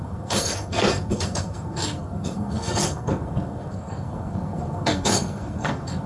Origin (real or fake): fake